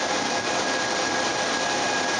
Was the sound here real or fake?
fake